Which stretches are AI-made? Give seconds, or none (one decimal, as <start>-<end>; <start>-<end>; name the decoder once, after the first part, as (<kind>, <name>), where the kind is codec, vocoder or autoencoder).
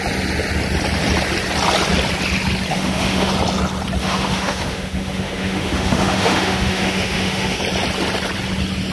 2.7-3.3 (autoencoder, DAC-VAE); 4.0-7.6